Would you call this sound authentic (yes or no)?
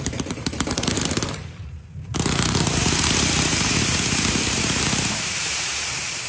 no